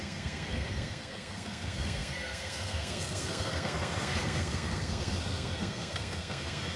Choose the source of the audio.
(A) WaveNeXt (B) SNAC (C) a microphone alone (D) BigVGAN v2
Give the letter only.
B